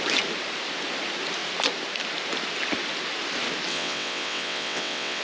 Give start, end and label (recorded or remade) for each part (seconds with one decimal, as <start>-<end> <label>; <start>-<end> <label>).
0.0-3.7 recorded; 3.7-5.2 remade